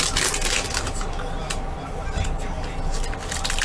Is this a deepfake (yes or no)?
no